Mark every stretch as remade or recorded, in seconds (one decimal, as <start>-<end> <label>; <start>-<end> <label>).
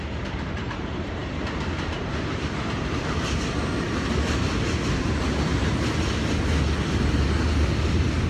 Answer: 0.0-8.3 recorded